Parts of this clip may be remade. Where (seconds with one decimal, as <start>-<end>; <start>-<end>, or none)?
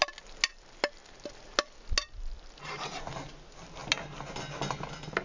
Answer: none